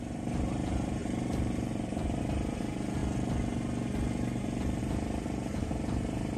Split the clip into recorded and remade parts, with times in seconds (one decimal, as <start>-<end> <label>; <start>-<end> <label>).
0.0-3.0 remade; 3.0-4.8 recorded; 4.8-6.4 remade

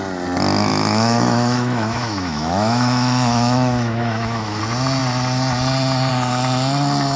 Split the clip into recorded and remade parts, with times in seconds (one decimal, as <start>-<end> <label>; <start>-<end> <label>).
0.0-0.7 recorded; 0.7-4.6 remade; 4.6-7.2 recorded

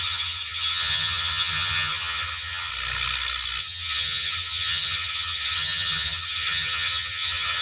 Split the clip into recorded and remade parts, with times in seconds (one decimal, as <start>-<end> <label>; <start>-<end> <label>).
0.0-2.7 remade; 2.7-3.6 recorded; 3.6-7.6 remade

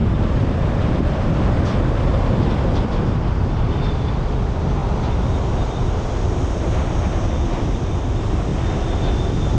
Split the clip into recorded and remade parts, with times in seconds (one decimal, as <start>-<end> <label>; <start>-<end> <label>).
0.0-3.9 remade; 3.9-4.8 recorded; 4.8-7.0 remade; 7.0-9.6 recorded

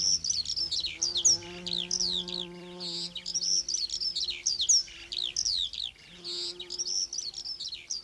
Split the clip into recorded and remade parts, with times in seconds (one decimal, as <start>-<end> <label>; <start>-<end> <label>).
0.0-8.0 recorded

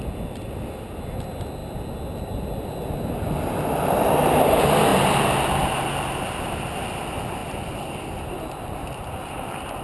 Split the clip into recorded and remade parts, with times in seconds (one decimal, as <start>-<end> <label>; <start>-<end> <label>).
0.0-9.8 recorded

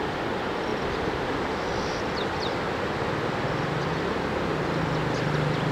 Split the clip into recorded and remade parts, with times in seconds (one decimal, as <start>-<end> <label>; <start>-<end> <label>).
0.0-5.7 recorded

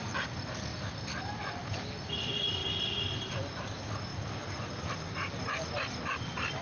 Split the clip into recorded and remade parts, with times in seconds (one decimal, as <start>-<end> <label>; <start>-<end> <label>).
0.0-6.6 recorded